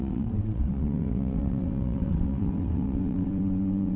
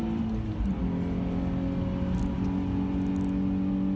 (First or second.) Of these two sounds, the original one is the second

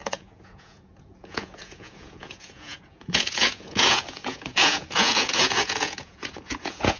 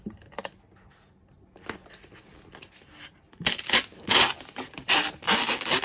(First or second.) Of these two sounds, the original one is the second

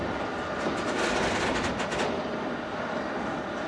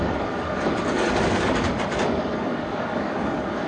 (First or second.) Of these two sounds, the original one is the first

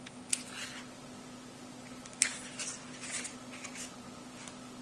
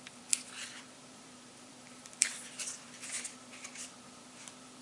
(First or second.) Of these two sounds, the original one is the first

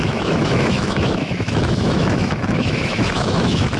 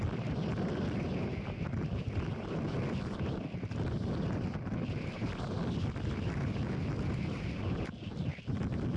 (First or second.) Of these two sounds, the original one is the second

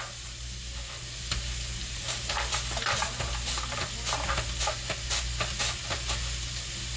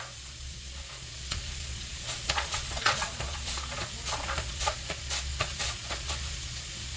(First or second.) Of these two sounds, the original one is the first